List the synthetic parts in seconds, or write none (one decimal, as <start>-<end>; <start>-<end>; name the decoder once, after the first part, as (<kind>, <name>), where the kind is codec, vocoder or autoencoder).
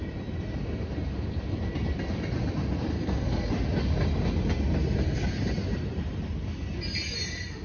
2.9-3.5 (codec, SNAC)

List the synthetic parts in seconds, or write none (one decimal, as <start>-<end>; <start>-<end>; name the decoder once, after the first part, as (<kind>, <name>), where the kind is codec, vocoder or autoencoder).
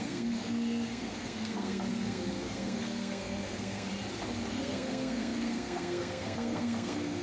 0.0-3.9 (codec, SNAC); 4.5-7.2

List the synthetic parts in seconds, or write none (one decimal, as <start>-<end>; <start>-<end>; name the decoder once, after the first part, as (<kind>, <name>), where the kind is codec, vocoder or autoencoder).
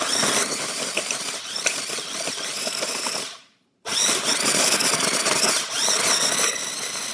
0.4-1.8 (vocoder, BigVGAN v2)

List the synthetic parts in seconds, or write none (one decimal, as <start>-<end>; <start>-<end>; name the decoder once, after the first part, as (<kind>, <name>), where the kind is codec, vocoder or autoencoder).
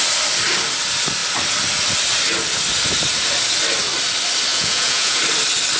4.5-5.2 (vocoder, Vocos)